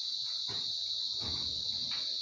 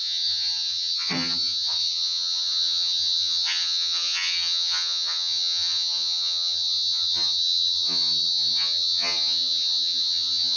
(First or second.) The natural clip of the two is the first